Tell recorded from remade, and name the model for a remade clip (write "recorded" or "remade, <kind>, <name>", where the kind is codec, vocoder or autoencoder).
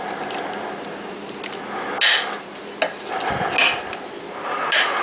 recorded